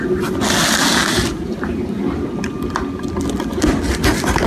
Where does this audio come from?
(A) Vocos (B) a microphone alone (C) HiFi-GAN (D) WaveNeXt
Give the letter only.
B